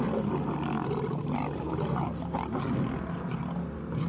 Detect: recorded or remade recorded